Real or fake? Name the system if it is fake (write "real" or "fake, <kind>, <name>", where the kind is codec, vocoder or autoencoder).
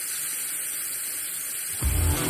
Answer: real